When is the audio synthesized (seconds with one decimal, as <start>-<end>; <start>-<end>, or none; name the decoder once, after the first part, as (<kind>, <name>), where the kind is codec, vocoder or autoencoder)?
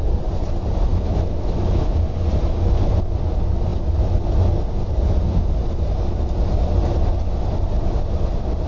0.9-1.8 (autoencoder, DAC-VAE)